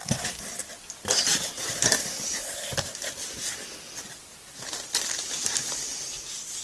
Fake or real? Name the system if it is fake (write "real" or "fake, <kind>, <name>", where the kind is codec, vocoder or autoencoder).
real